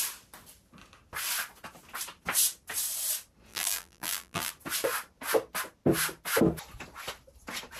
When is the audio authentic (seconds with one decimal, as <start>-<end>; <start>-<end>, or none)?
0.0-3.5; 4.5-7.8